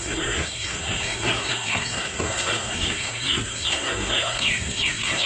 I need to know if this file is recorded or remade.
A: remade